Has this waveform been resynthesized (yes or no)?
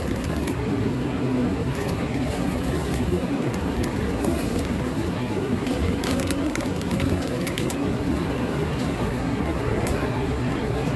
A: yes